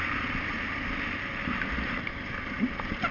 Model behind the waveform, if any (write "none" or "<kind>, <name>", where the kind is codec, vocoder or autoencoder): vocoder, BigVGAN v2